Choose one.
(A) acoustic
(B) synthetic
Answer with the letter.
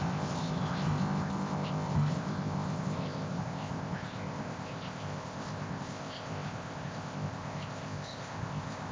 B